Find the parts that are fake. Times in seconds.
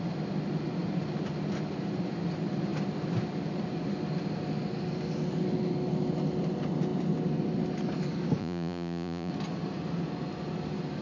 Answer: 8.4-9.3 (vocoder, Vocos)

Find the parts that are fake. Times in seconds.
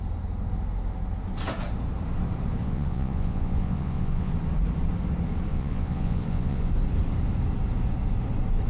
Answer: 2.6-4.3 (vocoder, Vocos); 5.5-6.7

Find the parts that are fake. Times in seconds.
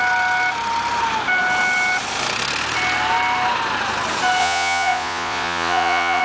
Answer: 4.4-6.2 (vocoder, Vocos)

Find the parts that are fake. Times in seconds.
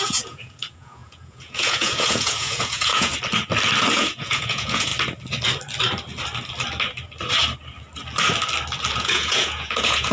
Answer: 0.0-3.1 (vocoder, Vocos); 3.9-4.9; 8.9-10.1